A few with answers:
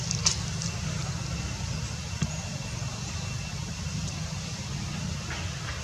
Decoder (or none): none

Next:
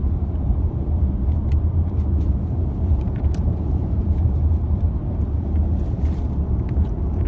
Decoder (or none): vocoder, BigVGAN v2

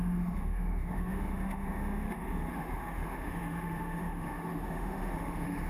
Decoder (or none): autoencoder, DAC-VAE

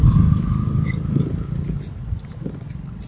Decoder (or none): none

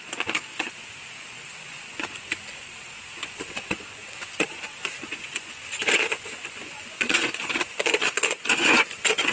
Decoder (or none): vocoder, Vocos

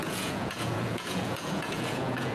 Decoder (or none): vocoder, Vocos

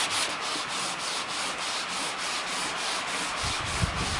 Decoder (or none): none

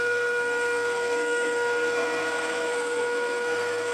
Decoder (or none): codec, SNAC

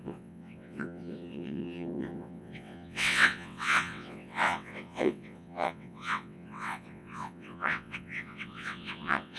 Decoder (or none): vocoder, WaveNeXt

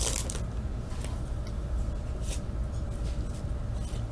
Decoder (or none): none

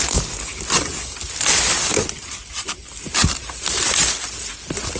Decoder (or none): none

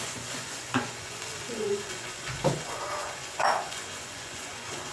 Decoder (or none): vocoder, Vocos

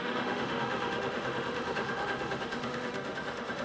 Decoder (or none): autoencoder, DAC-VAE